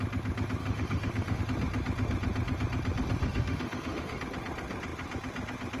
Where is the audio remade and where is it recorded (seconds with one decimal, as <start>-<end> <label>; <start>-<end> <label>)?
0.0-0.6 recorded; 0.6-1.4 remade; 1.4-3.2 recorded; 3.2-4.2 remade; 4.2-5.8 recorded